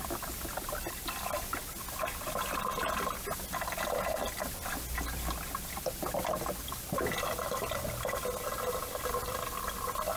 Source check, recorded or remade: recorded